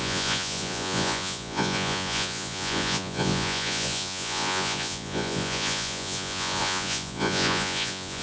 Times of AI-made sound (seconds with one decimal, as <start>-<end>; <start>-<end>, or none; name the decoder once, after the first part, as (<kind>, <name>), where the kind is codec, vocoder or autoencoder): 0.0-8.2 (vocoder, Vocos)